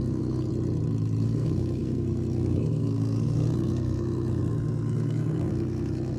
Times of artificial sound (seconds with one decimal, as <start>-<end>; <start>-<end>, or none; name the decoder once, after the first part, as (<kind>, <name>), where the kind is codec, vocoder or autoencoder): 0.0-0.5 (codec, SNAC); 1.2-6.2